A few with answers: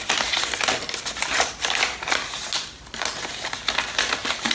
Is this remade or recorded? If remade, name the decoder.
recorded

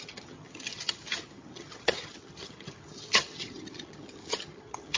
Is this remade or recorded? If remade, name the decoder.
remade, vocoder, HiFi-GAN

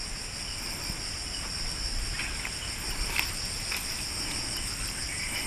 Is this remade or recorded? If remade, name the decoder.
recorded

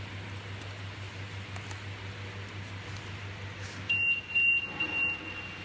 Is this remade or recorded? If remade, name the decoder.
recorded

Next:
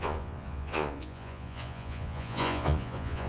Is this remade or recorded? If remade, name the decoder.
remade, vocoder, Vocos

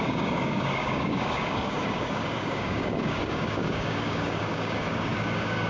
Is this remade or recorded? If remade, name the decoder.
remade, codec, DAC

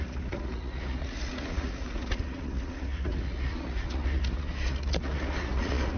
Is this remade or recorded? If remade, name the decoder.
remade, vocoder, Vocos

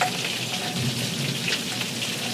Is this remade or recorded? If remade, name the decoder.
recorded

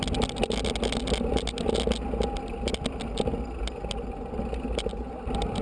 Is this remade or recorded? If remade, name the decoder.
recorded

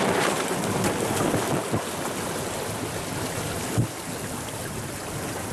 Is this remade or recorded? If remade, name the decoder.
recorded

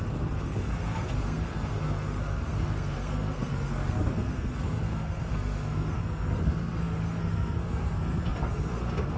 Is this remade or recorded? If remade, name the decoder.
remade, codec, SNAC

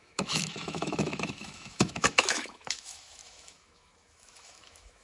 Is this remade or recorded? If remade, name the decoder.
remade, autoencoder, DAC-VAE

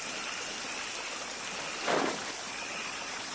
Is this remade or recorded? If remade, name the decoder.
recorded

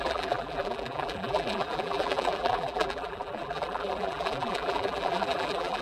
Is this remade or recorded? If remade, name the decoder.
remade, vocoder, BigVGAN v2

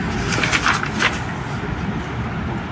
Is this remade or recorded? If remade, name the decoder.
recorded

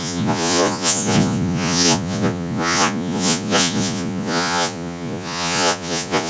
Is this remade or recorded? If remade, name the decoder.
remade, vocoder, Vocos